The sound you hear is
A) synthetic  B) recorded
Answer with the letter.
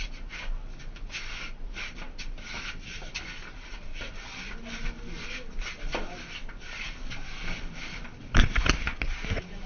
B